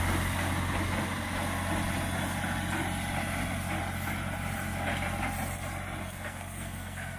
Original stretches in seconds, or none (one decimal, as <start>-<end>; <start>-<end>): 0.0-6.0